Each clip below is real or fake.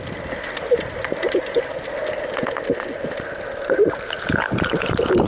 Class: real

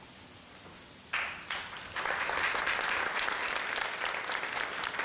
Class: real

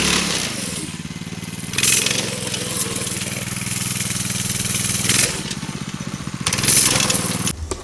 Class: real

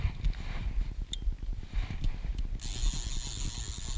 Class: real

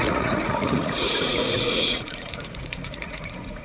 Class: fake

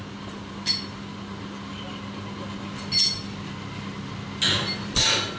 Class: real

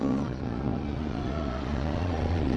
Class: fake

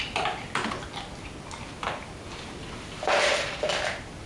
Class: real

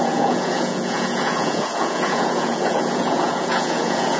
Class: fake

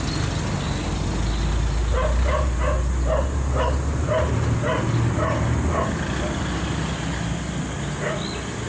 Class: real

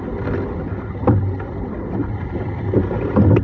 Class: real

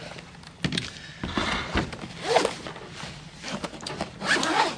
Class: real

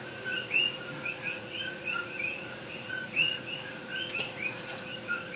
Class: fake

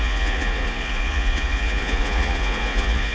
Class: fake